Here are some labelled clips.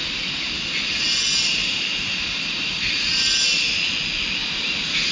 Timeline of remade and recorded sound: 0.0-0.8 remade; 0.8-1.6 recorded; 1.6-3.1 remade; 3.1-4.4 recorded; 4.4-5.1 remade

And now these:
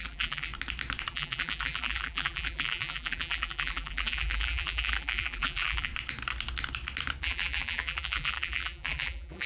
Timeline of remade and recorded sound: 0.0-0.5 remade; 0.5-1.1 recorded; 1.1-5.9 remade; 5.9-7.2 recorded; 7.2-9.5 remade

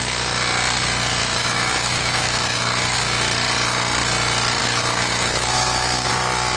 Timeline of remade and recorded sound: 0.0-1.2 recorded; 1.2-3.0 remade; 3.0-4.6 recorded; 4.6-6.1 remade; 6.1-6.6 recorded

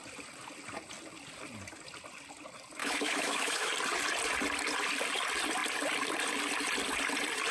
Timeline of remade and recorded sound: 0.0-2.8 recorded; 2.8-3.7 remade; 3.7-7.5 recorded

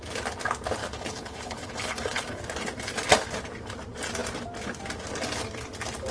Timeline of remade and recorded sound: 0.0-0.8 recorded; 0.8-2.4 remade; 2.4-6.1 recorded

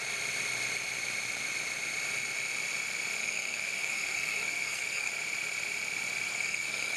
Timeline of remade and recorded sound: 0.0-3.2 recorded; 3.2-5.1 remade; 5.1-6.3 recorded; 6.3-7.0 remade